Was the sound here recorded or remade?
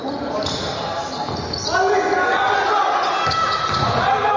recorded